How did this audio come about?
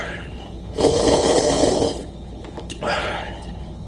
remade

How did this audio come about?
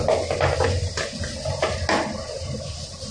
recorded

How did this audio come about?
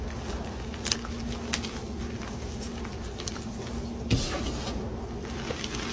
recorded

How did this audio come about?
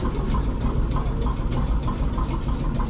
recorded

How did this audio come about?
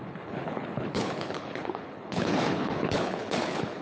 remade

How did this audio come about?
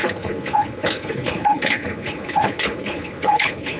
remade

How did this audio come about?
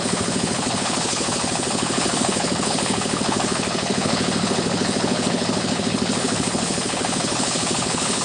remade